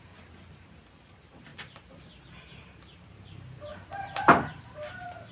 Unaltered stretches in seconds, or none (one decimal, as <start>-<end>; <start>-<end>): 1.5-2.2